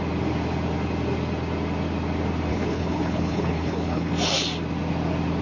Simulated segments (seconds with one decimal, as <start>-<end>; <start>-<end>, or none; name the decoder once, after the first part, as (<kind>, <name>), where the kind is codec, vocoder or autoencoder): 2.5-4.1 (codec, HILCodec)